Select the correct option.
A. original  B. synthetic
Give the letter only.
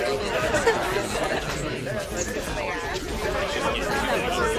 A